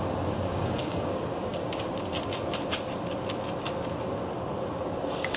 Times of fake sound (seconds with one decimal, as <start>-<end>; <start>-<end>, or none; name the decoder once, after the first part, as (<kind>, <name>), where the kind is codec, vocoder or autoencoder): 0.5-1.1 (codec, DAC)